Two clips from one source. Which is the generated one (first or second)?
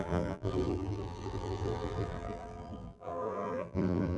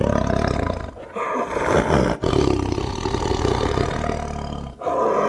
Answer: first